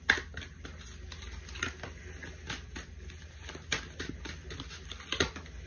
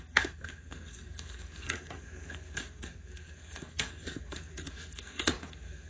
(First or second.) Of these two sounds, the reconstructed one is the second